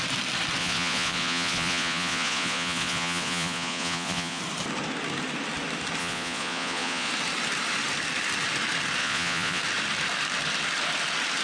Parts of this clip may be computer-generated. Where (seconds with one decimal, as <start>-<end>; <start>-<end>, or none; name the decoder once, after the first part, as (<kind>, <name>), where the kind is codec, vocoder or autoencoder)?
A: 0.6-4.4 (vocoder, Vocos); 6.0-7.1; 9.0-9.6